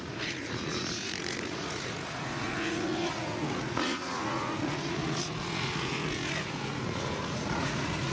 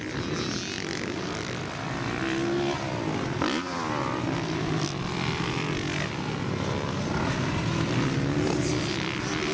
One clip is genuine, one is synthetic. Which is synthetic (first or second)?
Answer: first